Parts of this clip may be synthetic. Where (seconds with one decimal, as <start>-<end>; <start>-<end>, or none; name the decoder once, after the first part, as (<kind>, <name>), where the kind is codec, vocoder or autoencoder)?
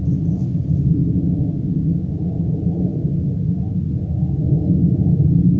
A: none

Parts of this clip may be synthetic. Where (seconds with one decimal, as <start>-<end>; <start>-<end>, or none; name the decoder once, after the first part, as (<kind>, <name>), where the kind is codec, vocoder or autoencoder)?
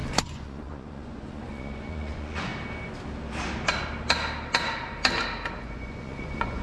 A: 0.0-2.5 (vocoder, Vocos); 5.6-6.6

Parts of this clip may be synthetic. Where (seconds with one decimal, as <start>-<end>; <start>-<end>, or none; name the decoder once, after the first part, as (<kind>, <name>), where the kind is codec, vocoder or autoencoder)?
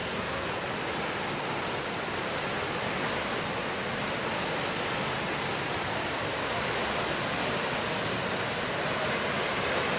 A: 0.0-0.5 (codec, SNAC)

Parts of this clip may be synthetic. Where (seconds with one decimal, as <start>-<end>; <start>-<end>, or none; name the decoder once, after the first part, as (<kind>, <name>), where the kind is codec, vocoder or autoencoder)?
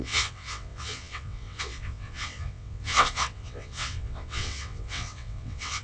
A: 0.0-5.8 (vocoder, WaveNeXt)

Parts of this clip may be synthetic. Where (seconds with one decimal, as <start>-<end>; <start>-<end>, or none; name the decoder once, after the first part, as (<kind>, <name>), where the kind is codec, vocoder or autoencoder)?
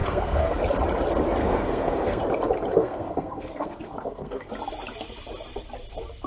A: 0.0-0.6 (codec, SNAC); 1.4-2.2; 2.8-4.5